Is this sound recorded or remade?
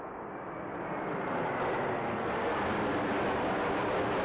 recorded